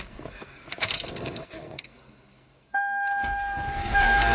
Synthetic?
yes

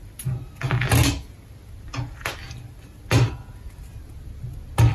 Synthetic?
no